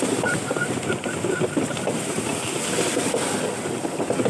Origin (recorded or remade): recorded